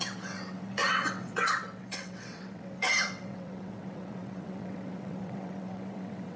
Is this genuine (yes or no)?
no